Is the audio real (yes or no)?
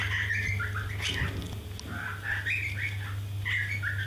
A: yes